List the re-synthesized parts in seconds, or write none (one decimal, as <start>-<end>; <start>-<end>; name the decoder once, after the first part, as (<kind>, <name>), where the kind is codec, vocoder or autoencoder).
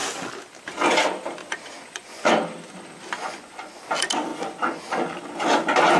1.4-2.3 (vocoder, Vocos); 3.2-3.8; 4.3-4.8